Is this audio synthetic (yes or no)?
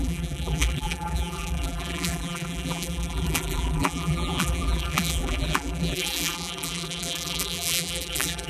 yes